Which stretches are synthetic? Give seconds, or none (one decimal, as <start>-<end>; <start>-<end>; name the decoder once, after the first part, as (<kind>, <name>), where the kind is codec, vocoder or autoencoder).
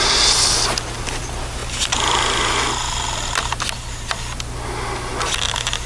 none